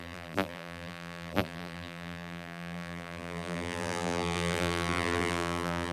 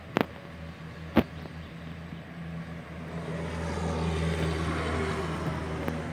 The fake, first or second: first